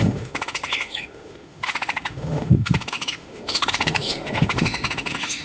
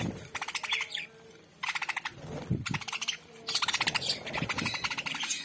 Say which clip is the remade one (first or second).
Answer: first